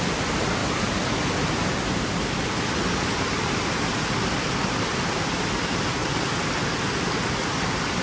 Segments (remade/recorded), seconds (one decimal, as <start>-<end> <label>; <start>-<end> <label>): 0.0-8.0 recorded